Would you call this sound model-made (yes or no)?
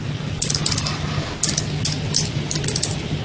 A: no